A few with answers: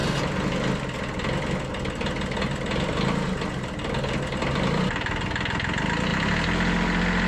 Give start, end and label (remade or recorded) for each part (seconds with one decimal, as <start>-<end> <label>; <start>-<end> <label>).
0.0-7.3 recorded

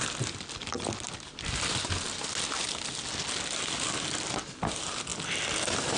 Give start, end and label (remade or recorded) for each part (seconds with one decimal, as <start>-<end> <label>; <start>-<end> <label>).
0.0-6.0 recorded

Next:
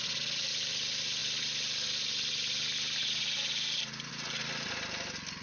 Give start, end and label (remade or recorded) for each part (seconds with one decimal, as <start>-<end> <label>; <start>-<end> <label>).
0.0-5.4 recorded

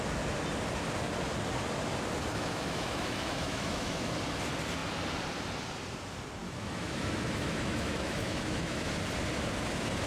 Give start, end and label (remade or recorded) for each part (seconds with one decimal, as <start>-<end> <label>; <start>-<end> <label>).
0.0-2.3 recorded; 2.3-4.1 remade; 4.1-6.4 recorded; 6.4-8.9 remade; 8.9-10.1 recorded

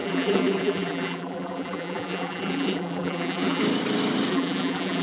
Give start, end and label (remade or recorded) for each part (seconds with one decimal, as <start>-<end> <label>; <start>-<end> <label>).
0.0-3.6 remade; 3.6-4.3 recorded; 4.3-5.0 remade

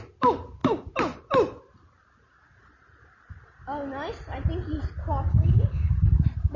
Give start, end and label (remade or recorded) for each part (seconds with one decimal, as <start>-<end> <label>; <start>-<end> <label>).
0.0-5.3 recorded; 5.3-5.9 remade; 5.9-6.6 recorded